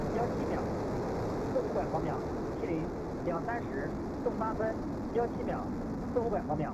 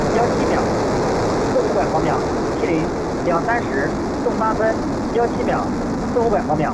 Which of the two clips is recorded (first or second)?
second